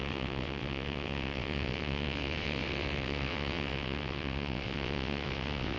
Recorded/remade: remade